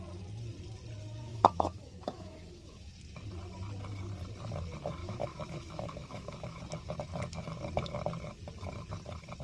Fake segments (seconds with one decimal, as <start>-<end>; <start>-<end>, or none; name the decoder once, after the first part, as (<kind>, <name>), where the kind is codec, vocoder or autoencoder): 1.3-2.9 (autoencoder, DAC-VAE); 5.0-6.6